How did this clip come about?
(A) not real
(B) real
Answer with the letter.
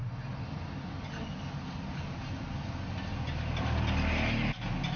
B